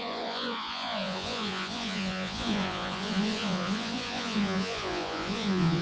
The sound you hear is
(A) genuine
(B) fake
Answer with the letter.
B